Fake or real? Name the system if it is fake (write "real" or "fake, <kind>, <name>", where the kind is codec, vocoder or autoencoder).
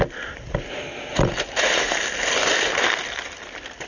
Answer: real